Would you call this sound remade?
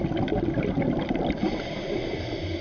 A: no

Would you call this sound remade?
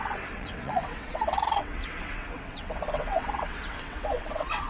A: yes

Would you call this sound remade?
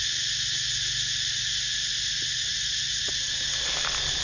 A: no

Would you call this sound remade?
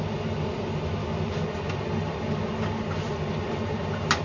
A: no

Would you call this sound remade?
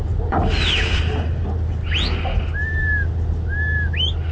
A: no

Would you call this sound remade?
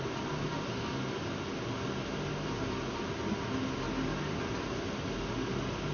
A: no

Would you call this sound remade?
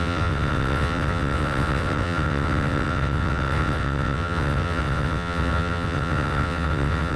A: yes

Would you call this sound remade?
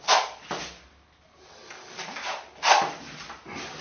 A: no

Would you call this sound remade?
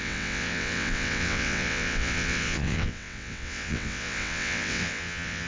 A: yes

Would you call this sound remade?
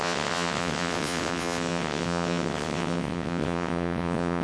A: yes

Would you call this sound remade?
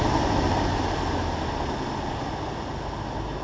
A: no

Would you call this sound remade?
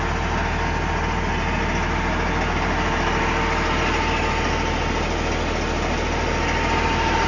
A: no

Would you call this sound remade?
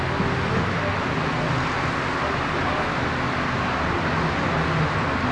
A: no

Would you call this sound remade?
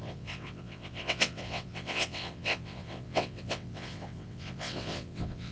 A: yes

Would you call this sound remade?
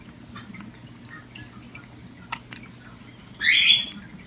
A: no